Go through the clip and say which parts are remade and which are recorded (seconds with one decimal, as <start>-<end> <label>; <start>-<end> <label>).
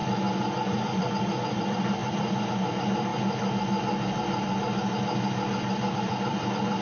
0.0-3.1 remade; 3.1-5.9 recorded; 5.9-6.8 remade